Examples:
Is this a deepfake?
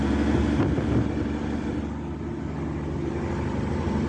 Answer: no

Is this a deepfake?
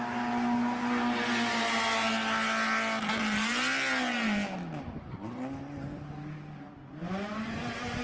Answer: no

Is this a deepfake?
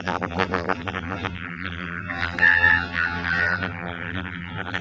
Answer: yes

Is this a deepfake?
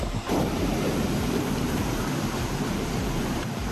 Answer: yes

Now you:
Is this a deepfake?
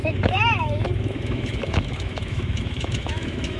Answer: yes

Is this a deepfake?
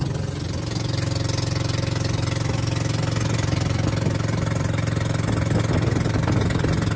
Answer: no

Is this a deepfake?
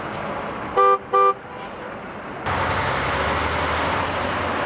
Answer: no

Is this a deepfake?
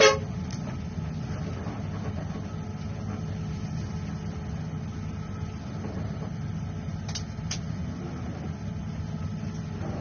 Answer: no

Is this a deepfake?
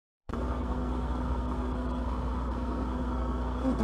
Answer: yes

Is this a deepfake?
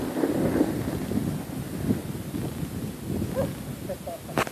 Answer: no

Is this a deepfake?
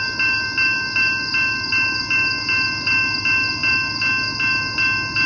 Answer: no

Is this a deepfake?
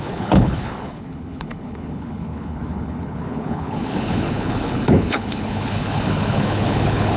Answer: yes